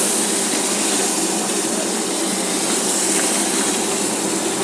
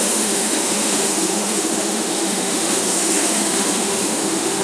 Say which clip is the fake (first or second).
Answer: second